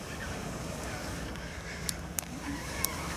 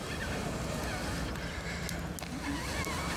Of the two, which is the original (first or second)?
second